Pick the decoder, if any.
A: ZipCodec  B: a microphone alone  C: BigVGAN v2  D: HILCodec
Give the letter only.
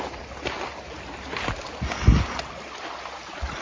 B